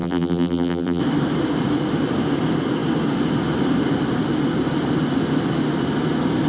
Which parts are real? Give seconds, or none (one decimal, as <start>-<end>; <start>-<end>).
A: 1.0-6.5